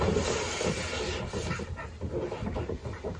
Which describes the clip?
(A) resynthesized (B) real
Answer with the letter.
B